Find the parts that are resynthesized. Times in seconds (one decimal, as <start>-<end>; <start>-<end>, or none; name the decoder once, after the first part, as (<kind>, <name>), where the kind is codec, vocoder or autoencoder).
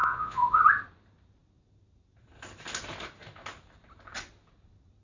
0.0-0.6 (vocoder, Vocos)